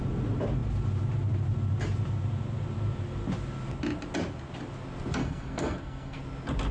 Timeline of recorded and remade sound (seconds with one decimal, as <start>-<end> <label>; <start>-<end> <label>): 0.0-5.2 recorded; 5.2-6.2 remade; 6.2-6.7 recorded